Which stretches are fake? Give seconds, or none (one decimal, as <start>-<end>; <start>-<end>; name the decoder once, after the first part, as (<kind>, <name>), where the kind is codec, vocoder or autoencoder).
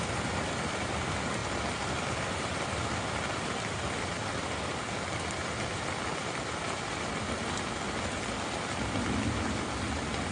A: none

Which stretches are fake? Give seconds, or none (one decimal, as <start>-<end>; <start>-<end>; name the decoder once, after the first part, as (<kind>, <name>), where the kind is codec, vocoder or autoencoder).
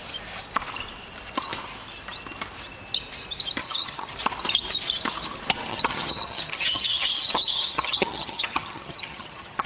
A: 3.6-4.1 (vocoder, HiFi-GAN); 5.7-9.7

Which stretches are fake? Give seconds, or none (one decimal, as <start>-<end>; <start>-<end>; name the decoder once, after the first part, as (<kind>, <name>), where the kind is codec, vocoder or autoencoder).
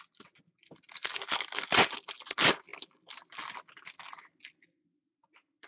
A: none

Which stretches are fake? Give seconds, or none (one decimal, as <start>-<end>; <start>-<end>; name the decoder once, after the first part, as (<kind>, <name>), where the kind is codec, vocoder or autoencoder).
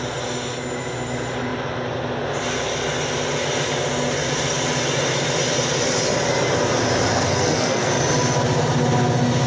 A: 7.1-7.9 (codec, SNAC)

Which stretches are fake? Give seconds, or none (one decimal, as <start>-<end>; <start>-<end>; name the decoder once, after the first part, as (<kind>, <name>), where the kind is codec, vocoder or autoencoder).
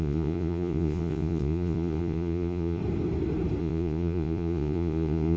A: 0.0-2.8 (vocoder, Vocos); 3.6-5.4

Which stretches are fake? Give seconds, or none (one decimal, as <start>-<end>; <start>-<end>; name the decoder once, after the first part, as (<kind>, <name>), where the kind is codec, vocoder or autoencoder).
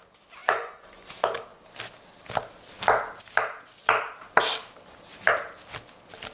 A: 0.4-1.1 (vocoder, Vocos)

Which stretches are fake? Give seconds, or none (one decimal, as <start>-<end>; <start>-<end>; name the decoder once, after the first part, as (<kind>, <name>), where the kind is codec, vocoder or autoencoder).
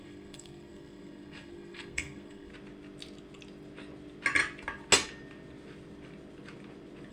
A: 0.0-2.5 (codec, SNAC)